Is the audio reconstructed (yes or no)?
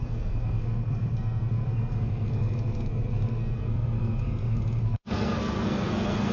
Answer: yes